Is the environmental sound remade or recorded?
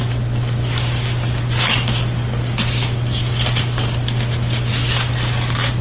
recorded